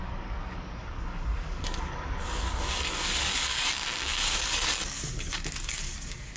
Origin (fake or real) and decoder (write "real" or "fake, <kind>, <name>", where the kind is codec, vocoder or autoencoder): fake, codec, DAC